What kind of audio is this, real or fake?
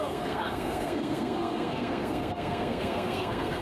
fake